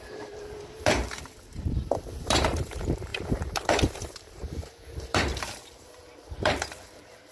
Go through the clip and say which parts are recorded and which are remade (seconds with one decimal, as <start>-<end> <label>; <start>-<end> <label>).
0.0-7.3 remade